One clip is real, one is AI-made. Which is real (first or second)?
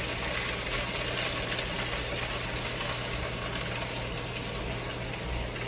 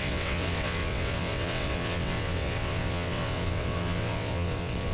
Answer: first